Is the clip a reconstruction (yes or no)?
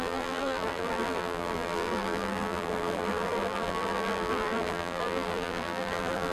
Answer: yes